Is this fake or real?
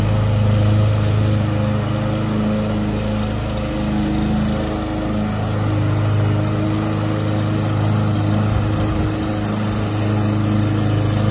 real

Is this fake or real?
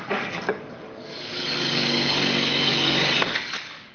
fake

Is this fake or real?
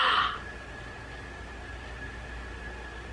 real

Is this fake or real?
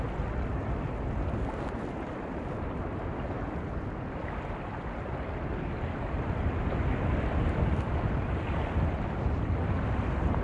real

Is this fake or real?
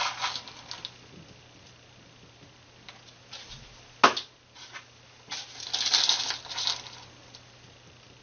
real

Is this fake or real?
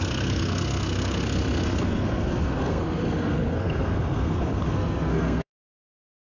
fake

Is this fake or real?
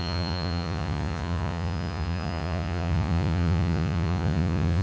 fake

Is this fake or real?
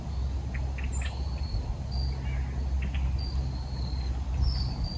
real